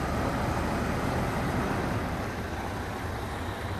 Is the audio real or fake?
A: real